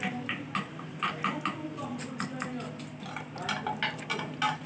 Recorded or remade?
recorded